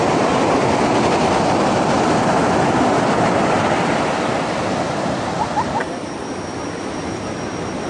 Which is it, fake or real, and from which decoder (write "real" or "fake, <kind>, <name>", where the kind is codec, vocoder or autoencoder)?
real